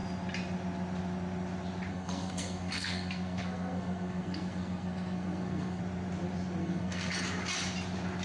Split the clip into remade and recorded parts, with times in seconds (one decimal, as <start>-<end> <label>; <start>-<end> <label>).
0.0-1.9 recorded; 1.9-5.8 remade; 5.8-6.6 recorded; 6.6-7.1 remade; 7.1-8.2 recorded